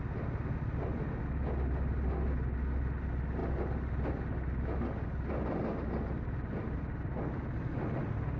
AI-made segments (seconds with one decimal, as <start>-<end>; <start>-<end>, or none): none